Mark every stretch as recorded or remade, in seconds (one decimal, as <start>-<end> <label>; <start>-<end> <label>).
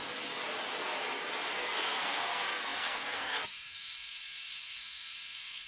0.0-1.5 recorded; 1.5-5.7 remade